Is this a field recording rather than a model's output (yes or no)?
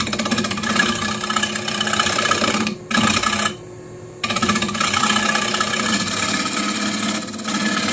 no